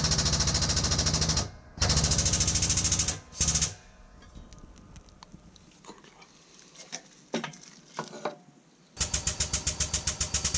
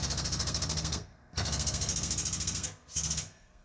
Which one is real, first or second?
first